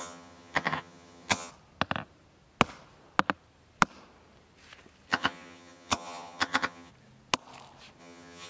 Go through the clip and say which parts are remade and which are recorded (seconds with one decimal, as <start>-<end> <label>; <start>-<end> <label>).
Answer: 0.0-1.5 remade; 1.5-5.1 recorded; 5.1-6.9 remade; 6.9-8.0 recorded; 8.0-8.5 remade